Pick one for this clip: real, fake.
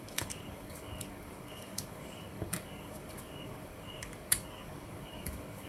fake